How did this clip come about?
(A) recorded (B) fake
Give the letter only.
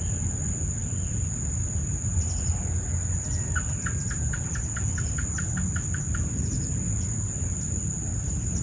A